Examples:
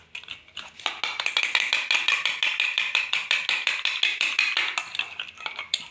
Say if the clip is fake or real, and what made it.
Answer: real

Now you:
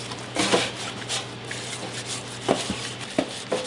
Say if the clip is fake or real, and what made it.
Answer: real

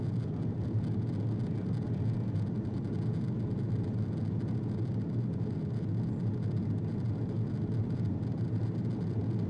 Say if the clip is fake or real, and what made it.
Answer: real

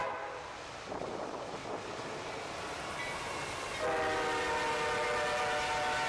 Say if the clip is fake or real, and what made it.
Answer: real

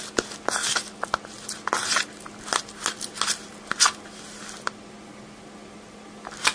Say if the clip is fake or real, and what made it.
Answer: real